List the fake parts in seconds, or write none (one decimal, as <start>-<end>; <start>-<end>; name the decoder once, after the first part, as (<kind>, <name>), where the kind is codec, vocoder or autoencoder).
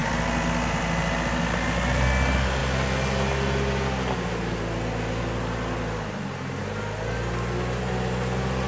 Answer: none